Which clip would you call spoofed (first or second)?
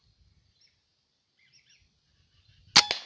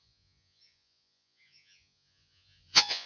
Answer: second